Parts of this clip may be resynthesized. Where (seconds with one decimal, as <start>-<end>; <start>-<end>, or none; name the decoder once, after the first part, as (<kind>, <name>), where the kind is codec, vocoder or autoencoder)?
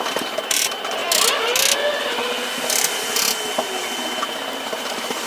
0.0-1.0 (vocoder, BigVGAN v2); 4.2-5.3